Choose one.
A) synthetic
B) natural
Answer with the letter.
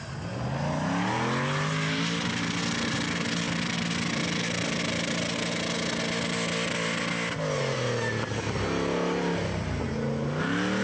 B